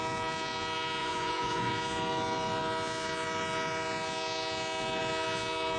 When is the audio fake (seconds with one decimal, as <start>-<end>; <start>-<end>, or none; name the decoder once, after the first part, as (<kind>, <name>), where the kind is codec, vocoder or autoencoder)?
1.0-1.7 (vocoder, Vocos)